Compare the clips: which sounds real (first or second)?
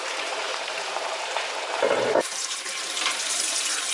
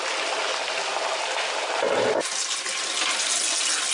second